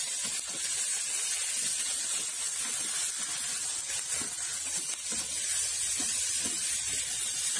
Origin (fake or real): real